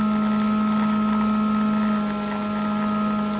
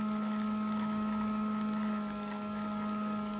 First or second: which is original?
first